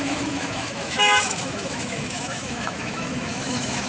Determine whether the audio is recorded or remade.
remade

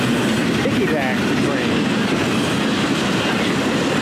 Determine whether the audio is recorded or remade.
recorded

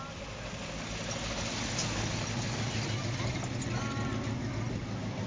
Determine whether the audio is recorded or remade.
recorded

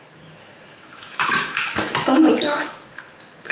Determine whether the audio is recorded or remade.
remade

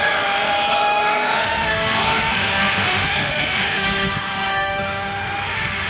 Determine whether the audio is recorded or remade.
remade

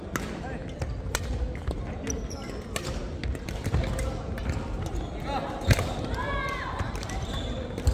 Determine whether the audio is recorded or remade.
recorded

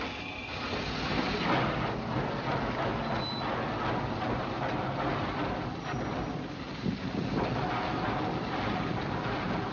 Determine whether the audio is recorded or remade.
recorded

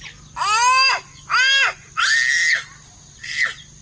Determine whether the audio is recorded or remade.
recorded